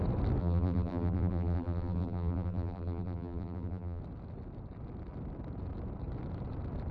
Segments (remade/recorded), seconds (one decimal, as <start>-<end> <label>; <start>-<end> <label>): 0.0-0.4 recorded; 0.4-4.0 remade; 4.0-6.9 recorded